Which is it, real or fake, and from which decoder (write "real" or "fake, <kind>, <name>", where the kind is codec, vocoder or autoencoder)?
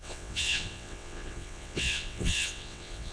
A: fake, vocoder, WaveNeXt